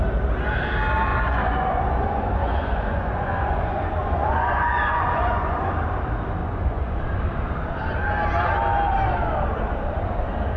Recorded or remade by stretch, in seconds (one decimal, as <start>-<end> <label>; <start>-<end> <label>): 0.0-1.1 recorded; 1.1-5.7 remade; 5.7-6.4 recorded; 6.4-7.0 remade; 7.0-10.6 recorded